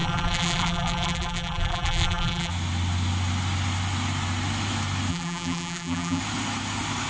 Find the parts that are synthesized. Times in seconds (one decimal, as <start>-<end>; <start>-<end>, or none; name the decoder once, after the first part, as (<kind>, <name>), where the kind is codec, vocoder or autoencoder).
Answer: 0.0-2.5 (vocoder, BigVGAN v2); 5.1-6.2